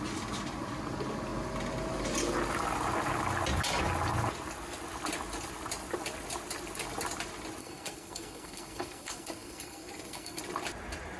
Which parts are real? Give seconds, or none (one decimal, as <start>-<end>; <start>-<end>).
0.0-7.6; 10.4-11.2